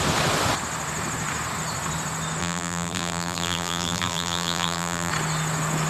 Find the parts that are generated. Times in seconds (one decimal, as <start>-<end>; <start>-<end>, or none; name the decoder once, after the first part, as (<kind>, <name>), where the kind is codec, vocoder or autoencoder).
2.4-5.1 (vocoder, BigVGAN v2)